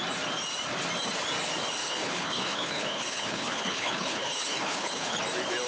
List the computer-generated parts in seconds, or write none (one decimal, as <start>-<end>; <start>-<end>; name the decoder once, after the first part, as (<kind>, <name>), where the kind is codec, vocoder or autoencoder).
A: 1.8-5.2 (codec, HILCodec)